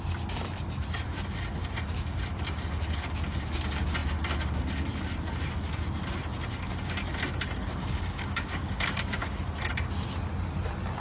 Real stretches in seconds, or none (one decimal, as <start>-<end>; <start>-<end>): 0.0-7.8; 9.2-11.0